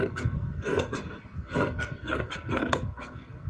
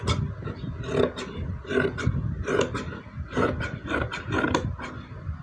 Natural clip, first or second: second